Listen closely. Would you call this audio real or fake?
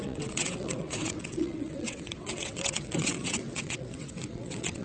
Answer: fake